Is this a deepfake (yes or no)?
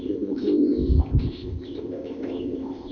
yes